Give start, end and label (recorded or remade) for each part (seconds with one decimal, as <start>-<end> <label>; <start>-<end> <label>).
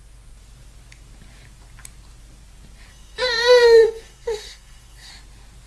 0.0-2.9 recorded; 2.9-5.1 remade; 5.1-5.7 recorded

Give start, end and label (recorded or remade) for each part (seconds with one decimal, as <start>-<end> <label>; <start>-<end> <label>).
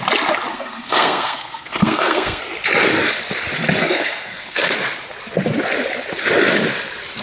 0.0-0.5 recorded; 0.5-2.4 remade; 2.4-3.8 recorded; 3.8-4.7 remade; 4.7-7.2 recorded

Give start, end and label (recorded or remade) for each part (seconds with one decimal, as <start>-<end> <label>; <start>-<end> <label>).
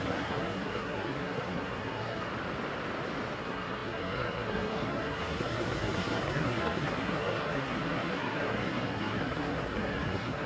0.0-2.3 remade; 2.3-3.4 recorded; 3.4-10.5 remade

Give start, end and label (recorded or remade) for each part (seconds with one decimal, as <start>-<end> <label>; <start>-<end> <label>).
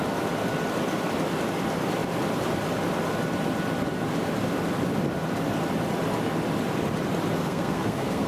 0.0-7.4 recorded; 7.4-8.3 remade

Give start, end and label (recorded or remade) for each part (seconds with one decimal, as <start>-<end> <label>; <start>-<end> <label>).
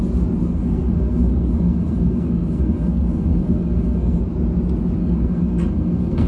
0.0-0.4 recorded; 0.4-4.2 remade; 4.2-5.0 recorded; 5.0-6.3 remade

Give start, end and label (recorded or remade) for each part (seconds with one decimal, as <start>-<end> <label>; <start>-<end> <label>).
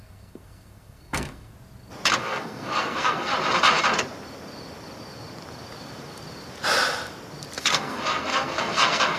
0.0-1.5 remade; 1.5-2.2 recorded; 2.2-3.3 remade; 3.3-7.6 recorded; 7.6-9.2 remade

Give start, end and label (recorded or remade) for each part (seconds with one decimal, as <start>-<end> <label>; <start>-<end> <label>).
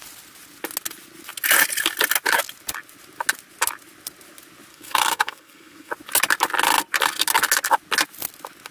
0.0-4.7 recorded; 4.7-5.9 remade; 5.9-8.7 recorded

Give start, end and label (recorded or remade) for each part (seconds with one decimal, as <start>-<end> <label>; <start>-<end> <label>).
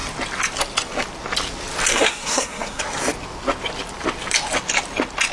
0.0-1.9 recorded; 1.9-2.8 remade; 2.8-5.3 recorded